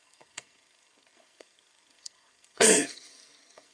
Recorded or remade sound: remade